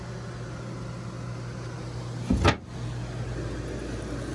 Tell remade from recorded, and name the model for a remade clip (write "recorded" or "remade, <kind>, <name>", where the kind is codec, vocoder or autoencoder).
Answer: recorded